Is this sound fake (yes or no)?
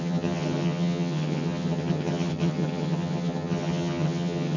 yes